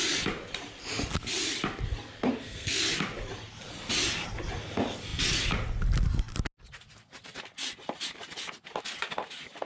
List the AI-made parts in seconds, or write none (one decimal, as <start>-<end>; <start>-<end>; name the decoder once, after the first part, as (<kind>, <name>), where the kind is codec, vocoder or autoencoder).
2.3-2.8 (codec, SNAC)